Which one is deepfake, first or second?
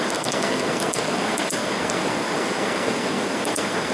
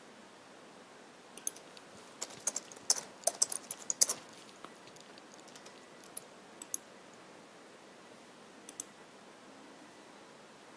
first